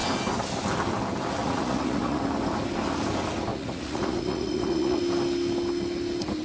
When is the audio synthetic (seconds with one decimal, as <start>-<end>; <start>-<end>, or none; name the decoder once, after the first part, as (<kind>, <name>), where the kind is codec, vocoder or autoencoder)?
1.4-2.2 (vocoder, Vocos); 3.5-5.0

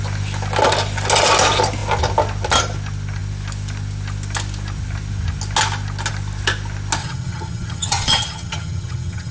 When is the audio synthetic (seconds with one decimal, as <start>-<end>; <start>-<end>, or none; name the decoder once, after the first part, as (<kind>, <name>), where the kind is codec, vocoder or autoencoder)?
7.0-9.3 (vocoder, HiFi-GAN)

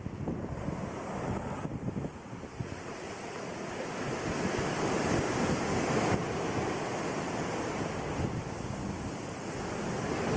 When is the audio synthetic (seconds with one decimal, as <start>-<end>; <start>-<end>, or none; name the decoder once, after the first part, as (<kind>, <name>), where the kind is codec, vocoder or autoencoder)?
2.5-3.7 (vocoder, Vocos)

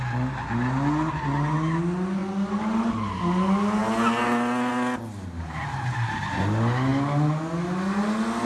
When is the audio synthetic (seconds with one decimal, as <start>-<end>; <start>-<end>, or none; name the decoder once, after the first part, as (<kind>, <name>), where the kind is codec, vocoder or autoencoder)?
none

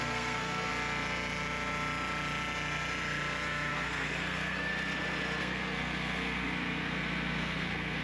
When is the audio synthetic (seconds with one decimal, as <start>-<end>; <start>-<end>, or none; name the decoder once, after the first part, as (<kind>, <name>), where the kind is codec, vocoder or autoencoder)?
0.0-0.7 (codec, SNAC); 3.7-4.7; 5.4-8.0